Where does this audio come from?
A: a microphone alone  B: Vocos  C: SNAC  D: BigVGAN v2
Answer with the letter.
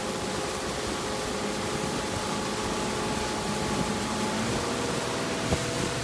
A